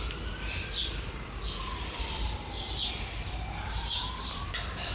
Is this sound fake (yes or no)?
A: no